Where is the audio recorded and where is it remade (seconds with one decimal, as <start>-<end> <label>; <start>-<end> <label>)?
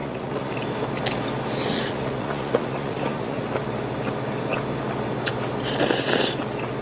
0.0-0.5 remade; 0.5-1.7 recorded; 1.7-3.4 remade; 3.4-6.8 recorded